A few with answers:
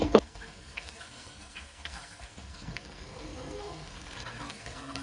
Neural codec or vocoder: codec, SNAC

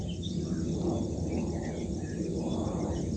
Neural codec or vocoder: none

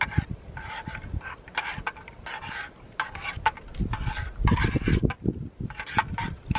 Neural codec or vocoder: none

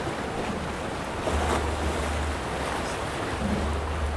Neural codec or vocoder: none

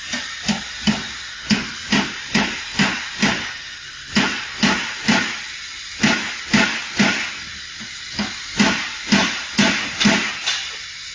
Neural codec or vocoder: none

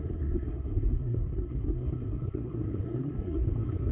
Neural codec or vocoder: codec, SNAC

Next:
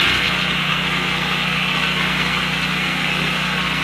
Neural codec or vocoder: codec, SNAC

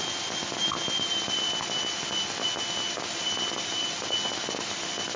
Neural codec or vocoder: none